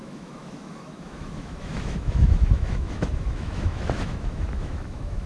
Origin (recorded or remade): remade